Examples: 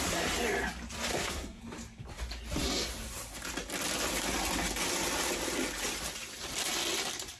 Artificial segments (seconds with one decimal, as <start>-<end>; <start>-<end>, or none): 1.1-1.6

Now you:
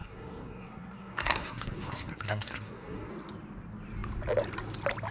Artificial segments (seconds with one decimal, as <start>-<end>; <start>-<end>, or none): 0.0-3.1

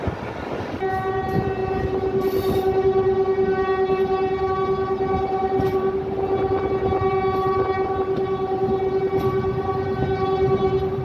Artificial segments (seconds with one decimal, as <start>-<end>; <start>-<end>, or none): none

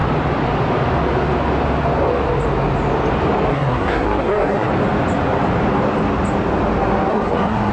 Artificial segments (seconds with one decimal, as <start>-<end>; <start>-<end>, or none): 3.5-4.7; 7.1-7.7